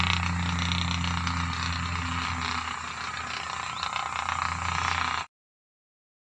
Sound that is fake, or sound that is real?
real